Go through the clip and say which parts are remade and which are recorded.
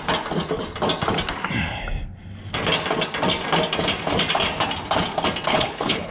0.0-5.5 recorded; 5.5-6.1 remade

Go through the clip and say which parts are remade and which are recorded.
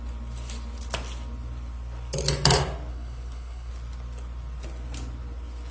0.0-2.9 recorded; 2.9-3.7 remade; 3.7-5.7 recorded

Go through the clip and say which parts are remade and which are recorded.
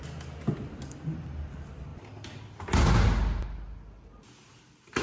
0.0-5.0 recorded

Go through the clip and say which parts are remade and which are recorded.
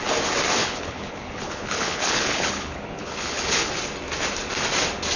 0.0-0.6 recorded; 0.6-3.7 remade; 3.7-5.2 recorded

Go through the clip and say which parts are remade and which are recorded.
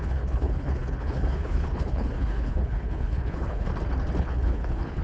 0.0-3.7 remade; 3.7-4.2 recorded; 4.2-5.0 remade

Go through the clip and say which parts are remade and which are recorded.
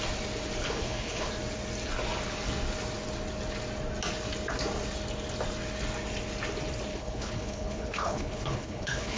0.0-0.6 recorded; 0.6-1.3 remade; 1.3-6.9 recorded; 6.9-9.2 remade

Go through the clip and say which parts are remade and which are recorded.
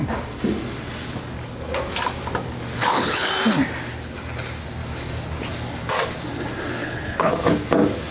0.0-2.7 recorded; 2.7-3.3 remade; 3.3-6.8 recorded; 6.8-7.3 remade; 7.3-8.1 recorded